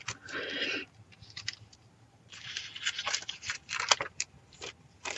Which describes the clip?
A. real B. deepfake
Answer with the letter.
A